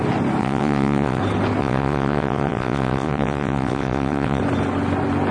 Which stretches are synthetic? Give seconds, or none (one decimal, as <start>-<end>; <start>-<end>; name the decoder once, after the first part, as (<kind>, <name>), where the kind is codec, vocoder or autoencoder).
0.4-1.2 (vocoder, WaveNeXt); 1.6-4.4